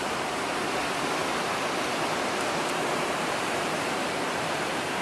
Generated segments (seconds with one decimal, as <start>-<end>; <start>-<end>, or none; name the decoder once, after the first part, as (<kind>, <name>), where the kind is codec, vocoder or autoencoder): 0.0-0.8 (vocoder, BigVGAN v2); 2.1-5.0